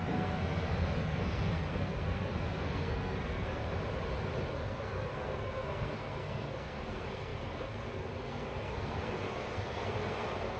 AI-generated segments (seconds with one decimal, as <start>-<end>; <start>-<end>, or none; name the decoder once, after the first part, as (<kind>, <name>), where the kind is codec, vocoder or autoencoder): 0.0-3.7 (codec, SNAC); 4.5-10.6

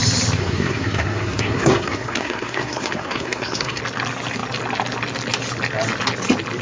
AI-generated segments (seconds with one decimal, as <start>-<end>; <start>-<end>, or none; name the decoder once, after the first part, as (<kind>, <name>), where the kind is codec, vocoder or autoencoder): 0.4-3.8 (codec, SNAC)

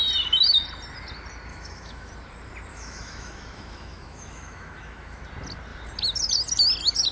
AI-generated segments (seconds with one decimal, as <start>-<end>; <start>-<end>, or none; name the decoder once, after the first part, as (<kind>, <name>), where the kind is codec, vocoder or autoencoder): 1.5-2.1 (autoencoder, DAC-VAE); 2.7-5.2

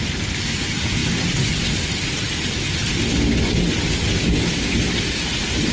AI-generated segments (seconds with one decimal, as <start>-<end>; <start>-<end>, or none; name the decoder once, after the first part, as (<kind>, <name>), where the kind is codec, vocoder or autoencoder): none

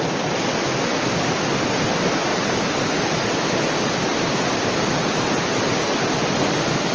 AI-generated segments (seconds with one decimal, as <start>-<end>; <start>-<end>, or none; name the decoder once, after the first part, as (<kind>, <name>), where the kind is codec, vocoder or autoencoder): none

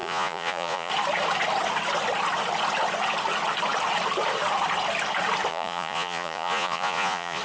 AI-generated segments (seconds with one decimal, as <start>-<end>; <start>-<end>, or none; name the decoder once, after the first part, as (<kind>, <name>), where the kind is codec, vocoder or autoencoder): 0.0-0.9 (vocoder, Vocos); 5.5-7.4

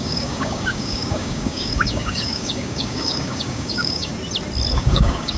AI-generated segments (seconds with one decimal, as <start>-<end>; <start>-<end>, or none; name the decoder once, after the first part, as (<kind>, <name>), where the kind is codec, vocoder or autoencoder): 0.0-4.1 (codec, DAC); 4.7-5.4

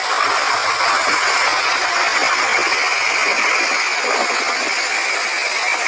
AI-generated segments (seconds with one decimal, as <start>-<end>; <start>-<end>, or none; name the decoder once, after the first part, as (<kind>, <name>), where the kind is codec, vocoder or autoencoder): 1.0-1.8 (vocoder, Vocos)